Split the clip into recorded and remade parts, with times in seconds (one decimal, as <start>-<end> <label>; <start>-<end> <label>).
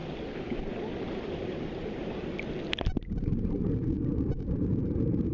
0.0-3.1 recorded; 3.1-5.3 remade